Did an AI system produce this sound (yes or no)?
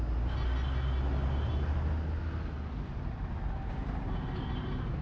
no